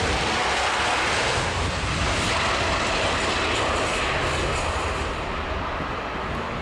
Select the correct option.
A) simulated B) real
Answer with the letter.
B